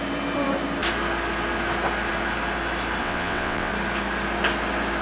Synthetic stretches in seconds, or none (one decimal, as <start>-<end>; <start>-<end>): 3.0-3.7